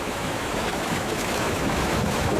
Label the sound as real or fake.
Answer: fake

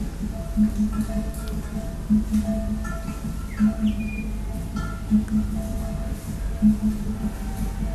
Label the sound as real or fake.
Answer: real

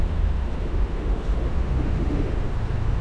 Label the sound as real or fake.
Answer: fake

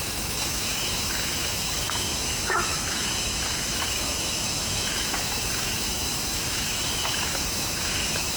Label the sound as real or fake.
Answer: fake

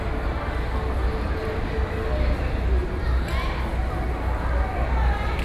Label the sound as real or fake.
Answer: real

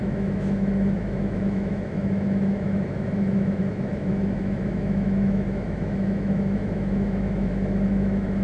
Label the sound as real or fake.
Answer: fake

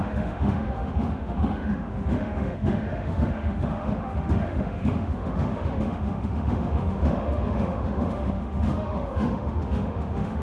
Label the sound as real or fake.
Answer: fake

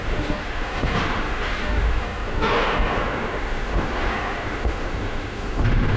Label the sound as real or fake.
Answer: fake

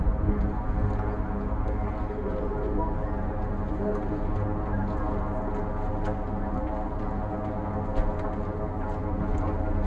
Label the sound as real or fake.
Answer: real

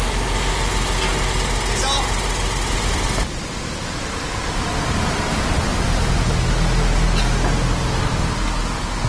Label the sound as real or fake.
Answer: real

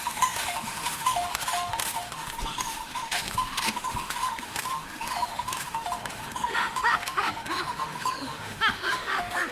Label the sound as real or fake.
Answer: fake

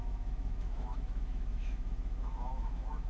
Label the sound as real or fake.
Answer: fake